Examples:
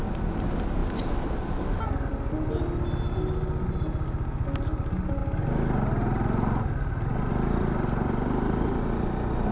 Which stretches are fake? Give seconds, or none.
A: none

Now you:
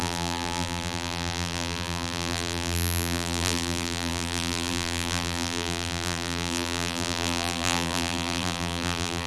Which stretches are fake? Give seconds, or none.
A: 0.0-9.3 (vocoder, BigVGAN v2)

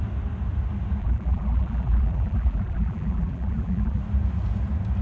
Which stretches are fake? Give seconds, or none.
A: 1.0-4.0 (vocoder, BigVGAN v2)

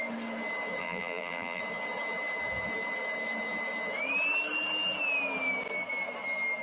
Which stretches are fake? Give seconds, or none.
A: 0.8-1.6 (vocoder, BigVGAN v2)

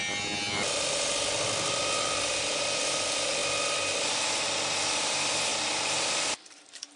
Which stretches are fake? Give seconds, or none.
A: 2.5-3.4 (vocoder, BigVGAN v2); 4.9-7.0

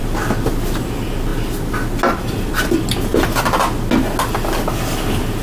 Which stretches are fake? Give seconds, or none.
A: 0.8-1.3 (vocoder, BigVGAN v2); 2.1-3.1; 4.8-5.4

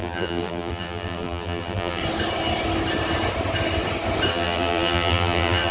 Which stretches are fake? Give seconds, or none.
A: 0.0-2.0 (vocoder, BigVGAN v2); 4.3-5.7